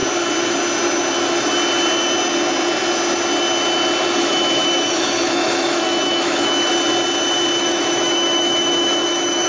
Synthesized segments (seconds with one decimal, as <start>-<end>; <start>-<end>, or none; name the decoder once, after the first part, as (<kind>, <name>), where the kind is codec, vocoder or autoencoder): 4.2-6.7 (autoencoder, DAC-VAE); 7.6-9.5